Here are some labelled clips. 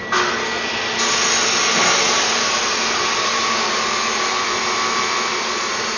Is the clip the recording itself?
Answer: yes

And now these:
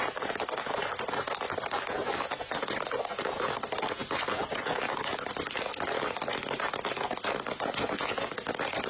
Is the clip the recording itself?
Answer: yes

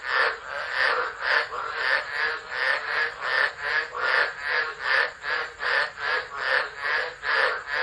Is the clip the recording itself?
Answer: yes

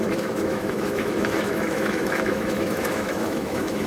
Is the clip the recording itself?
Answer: no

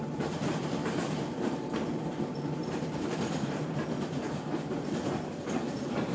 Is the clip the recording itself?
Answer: no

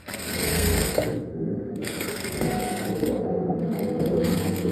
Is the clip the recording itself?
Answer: no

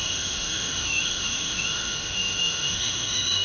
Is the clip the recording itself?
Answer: no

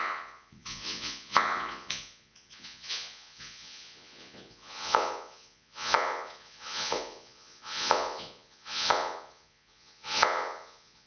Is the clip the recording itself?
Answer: no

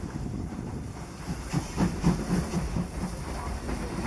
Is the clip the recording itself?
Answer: yes